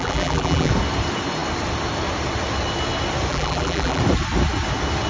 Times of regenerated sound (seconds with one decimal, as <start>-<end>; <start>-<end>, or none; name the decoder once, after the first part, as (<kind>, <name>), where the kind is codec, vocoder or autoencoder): 0.0-0.7 (vocoder, BigVGAN v2); 3.3-4.0